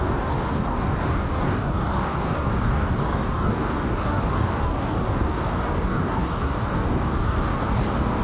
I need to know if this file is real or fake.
fake